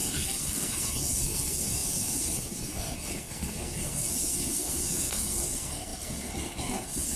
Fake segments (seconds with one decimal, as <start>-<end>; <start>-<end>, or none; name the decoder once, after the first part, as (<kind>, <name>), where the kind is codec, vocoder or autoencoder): 0.0-7.2 (codec, SNAC)